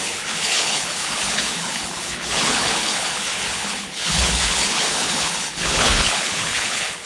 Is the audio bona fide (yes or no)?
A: no